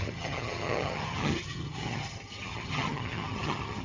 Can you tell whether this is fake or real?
fake